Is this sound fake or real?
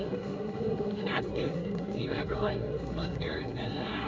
fake